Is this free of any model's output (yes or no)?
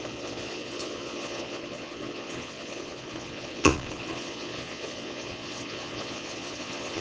no